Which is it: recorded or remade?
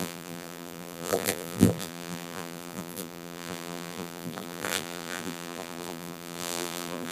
remade